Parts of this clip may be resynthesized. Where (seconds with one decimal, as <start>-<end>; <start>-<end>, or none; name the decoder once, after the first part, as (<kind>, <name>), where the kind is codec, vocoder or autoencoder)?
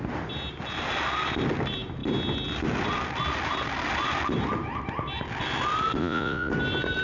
6.0-6.5 (vocoder, Vocos)